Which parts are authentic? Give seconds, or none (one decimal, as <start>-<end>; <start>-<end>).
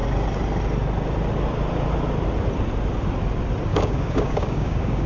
0.0-3.7